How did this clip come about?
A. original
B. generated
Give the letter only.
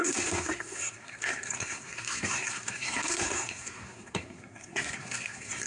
B